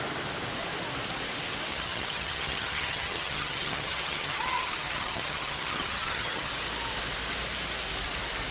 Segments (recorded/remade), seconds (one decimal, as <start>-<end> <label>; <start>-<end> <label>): 0.0-1.7 recorded; 1.7-6.5 remade; 6.5-8.5 recorded